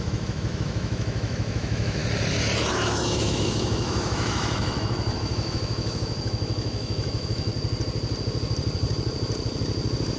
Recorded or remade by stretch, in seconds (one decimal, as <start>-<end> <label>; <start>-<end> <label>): 0.0-2.0 remade; 2.0-2.7 recorded; 2.7-7.5 remade; 7.5-10.2 recorded